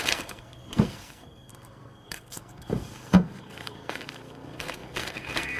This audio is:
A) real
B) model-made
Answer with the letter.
B